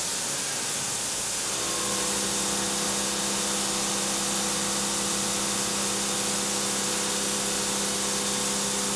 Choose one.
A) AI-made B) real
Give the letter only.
B